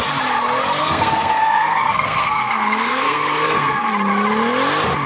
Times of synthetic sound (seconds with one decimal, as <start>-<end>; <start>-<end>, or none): 0.8-3.9

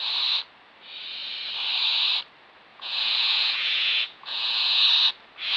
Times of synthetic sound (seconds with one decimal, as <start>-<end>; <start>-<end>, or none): 2.7-4.9

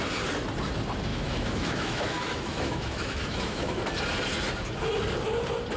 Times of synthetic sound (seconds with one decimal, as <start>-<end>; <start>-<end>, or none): 1.1-3.8

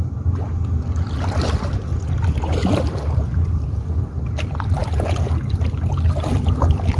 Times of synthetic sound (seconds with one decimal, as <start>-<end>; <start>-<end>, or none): none